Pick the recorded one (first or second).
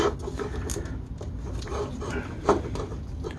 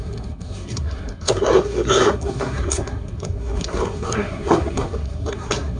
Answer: first